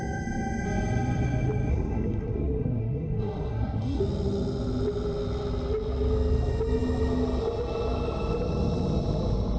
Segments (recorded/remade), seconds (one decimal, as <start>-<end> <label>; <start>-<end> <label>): 0.0-1.7 recorded; 1.7-4.0 remade; 4.0-9.6 recorded